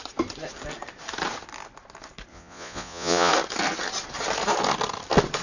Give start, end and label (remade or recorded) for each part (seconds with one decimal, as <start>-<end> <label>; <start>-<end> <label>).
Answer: 0.0-2.3 recorded; 2.3-3.3 remade; 3.3-5.4 recorded